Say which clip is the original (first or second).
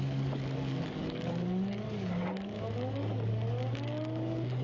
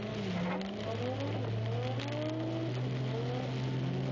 second